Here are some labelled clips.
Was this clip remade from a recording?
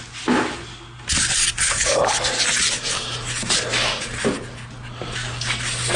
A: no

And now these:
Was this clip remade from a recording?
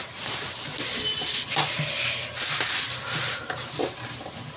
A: no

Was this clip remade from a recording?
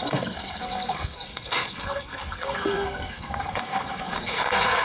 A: yes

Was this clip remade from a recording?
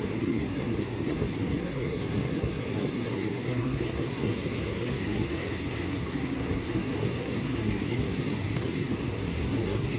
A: yes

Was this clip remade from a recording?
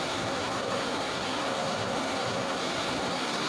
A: yes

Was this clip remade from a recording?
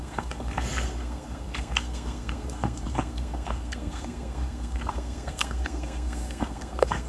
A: yes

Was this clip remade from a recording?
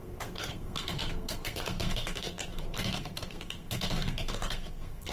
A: yes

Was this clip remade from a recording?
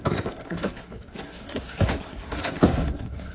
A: yes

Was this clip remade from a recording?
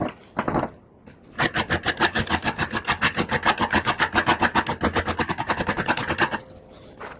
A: no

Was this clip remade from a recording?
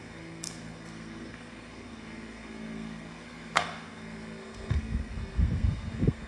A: yes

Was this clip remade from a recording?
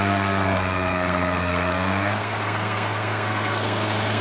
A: yes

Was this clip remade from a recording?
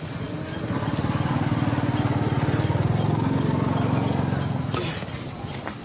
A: no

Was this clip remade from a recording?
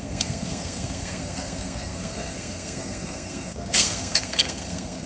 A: yes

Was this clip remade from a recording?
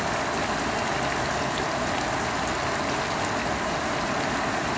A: no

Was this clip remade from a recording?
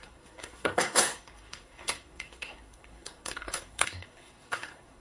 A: yes